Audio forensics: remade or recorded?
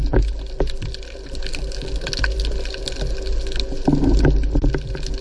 recorded